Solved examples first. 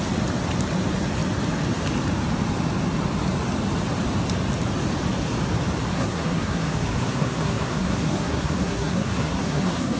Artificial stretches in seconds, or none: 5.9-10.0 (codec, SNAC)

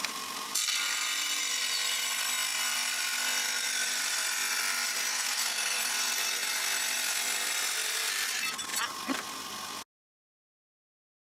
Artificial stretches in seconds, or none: 5.1-5.9 (codec, SNAC)

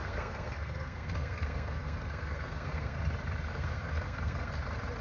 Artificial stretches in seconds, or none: 0.0-3.0 (codec, SNAC); 3.5-4.5

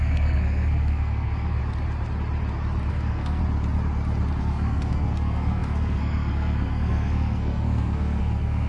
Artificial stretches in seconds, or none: 0.0-1.6 (codec, SNAC); 2.9-3.4; 4.4-8.7

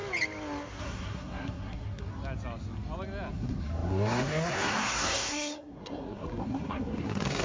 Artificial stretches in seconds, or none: 0.8-2.1 (codec, SNAC); 3.3-7.4